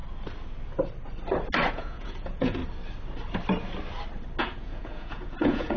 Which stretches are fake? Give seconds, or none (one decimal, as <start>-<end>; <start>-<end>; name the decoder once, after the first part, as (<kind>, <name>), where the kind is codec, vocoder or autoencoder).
1.7-2.6 (vocoder, Vocos); 4.4-5.8